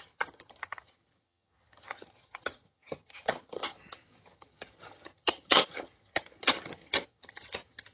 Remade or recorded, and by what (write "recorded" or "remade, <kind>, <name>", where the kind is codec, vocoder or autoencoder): remade, vocoder, HiFi-GAN